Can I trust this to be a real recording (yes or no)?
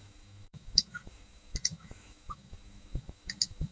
no